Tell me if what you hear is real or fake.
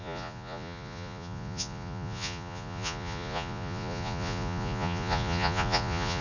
fake